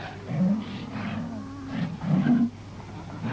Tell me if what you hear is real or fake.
real